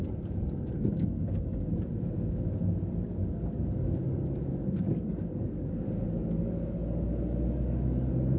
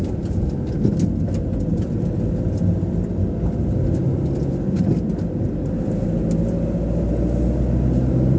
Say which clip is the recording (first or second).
second